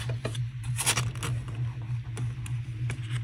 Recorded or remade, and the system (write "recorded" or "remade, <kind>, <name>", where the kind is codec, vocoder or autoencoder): recorded